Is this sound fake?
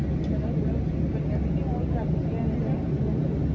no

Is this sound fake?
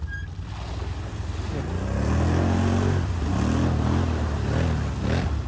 no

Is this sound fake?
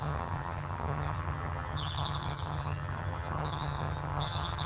yes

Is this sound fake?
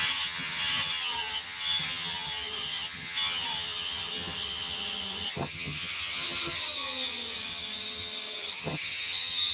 yes